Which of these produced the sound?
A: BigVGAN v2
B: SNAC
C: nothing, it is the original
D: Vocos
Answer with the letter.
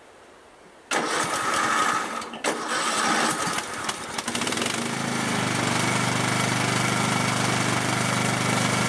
C